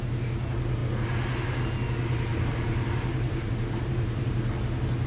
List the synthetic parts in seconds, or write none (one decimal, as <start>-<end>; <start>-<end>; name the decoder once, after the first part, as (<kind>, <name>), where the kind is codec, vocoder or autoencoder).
2.3-4.5 (vocoder, BigVGAN v2)

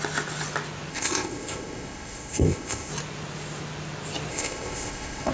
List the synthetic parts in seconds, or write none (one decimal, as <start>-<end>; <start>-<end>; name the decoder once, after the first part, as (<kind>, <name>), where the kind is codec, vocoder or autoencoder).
0.9-2.9 (codec, ZipCodec); 4.3-5.3